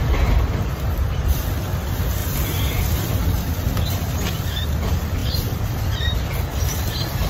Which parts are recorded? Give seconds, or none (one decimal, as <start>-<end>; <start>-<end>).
0.0-5.2; 6.2-7.3